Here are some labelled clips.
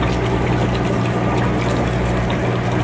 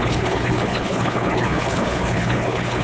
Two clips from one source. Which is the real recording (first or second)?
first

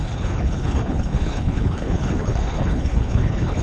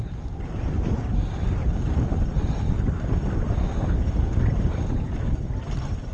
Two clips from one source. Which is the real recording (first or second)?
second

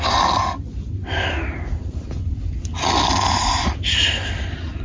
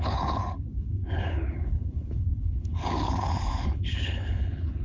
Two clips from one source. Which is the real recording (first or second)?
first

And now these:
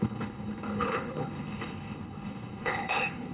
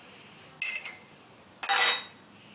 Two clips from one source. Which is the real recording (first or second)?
second